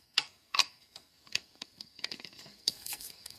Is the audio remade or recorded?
remade